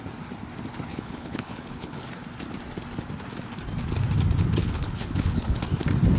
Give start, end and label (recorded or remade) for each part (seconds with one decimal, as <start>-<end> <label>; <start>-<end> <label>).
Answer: 0.0-0.9 recorded; 0.9-2.1 remade; 2.1-4.6 recorded; 4.6-5.6 remade; 5.6-6.2 recorded